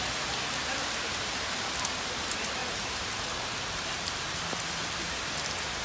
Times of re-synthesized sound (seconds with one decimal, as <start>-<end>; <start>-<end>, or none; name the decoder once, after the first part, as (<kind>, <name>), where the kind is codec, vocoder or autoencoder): 2.6-4.4 (vocoder, BigVGAN v2)